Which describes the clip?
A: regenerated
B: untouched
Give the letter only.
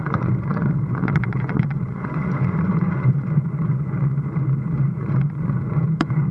A